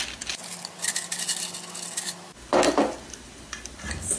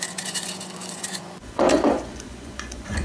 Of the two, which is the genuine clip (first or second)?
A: first